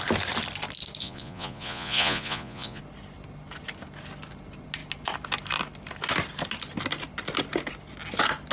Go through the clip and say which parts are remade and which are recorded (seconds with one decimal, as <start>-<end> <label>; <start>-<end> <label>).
0.0-1.0 recorded; 1.0-2.8 remade; 2.8-8.5 recorded